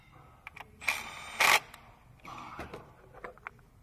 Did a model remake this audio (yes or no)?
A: no